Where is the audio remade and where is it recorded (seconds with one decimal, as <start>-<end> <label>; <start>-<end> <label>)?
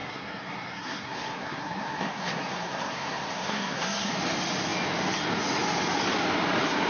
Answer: 0.0-4.1 remade; 4.1-6.9 recorded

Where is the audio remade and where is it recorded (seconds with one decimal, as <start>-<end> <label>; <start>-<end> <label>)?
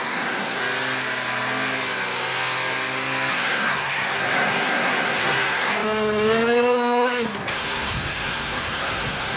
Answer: 0.0-0.6 remade; 0.6-3.3 recorded; 3.3-9.4 remade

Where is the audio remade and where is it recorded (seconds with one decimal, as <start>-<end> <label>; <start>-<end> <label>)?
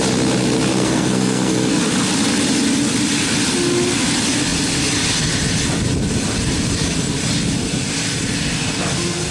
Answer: 0.0-0.7 recorded; 0.7-1.8 remade; 1.8-9.3 recorded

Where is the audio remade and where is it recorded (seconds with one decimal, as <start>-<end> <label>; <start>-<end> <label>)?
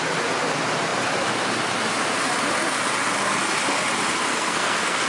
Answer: 0.0-4.3 recorded; 4.3-5.1 remade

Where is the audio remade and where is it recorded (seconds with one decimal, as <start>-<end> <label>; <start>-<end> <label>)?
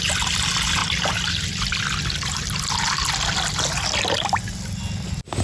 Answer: 0.0-5.4 recorded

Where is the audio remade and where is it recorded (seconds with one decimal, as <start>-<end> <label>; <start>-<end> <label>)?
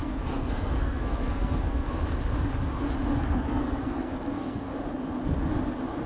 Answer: 0.0-2.0 remade; 2.0-3.2 recorded; 3.2-4.7 remade; 4.7-6.1 recorded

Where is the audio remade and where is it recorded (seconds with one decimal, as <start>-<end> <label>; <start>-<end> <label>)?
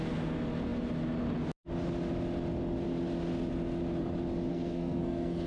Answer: 0.0-4.5 recorded; 4.5-5.5 remade